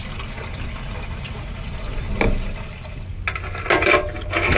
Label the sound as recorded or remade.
recorded